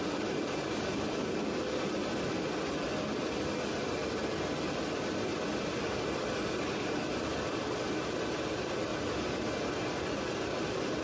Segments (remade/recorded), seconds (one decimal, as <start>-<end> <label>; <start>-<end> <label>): 0.0-2.9 remade; 2.9-3.8 recorded; 3.8-5.3 remade; 5.3-7.5 recorded; 7.5-8.9 remade; 8.9-9.9 recorded; 9.9-11.0 remade